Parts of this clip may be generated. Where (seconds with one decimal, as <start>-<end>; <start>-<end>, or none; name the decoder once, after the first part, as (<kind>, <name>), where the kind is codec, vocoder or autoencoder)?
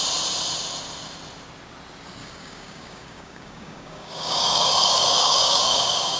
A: 2.2-6.2 (codec, DAC)